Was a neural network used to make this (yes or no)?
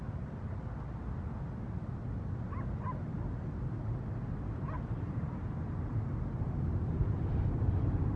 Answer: no